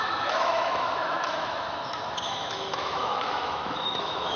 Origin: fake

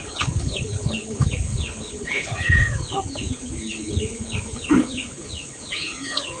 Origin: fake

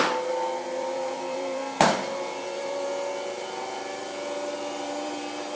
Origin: fake